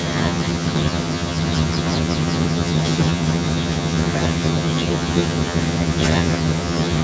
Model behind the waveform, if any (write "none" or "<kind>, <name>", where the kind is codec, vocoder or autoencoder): vocoder, HiFi-GAN